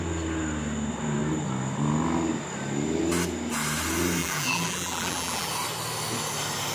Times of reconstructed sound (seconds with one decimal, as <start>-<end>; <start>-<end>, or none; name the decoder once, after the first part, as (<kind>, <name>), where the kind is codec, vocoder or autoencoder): 4.2-5.5 (vocoder, BigVGAN v2)